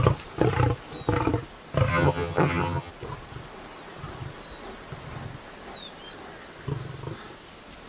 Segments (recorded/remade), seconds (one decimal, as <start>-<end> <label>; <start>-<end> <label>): 0.0-1.9 recorded; 1.9-2.9 remade; 2.9-7.9 recorded